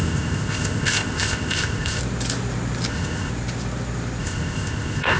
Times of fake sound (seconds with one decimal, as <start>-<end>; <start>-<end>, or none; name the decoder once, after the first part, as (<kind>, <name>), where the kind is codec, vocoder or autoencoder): 0.0-2.0 (codec, ZipCodec); 2.9-3.3; 4.2-5.2